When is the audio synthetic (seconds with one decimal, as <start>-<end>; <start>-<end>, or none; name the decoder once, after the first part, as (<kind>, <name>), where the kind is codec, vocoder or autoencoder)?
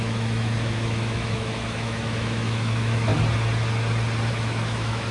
0.0-3.1 (autoencoder, DAC-VAE); 4.3-5.1